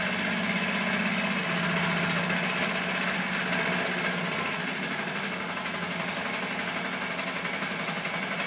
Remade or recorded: recorded